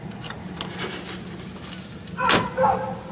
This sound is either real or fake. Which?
real